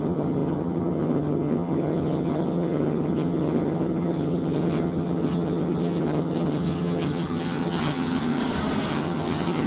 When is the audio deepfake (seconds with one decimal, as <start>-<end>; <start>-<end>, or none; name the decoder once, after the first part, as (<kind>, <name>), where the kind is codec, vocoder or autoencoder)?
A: 0.0-8.4 (vocoder, HiFi-GAN); 8.9-9.7